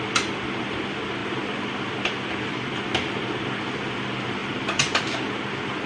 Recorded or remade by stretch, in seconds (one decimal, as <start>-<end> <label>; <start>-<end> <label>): 0.0-5.9 recorded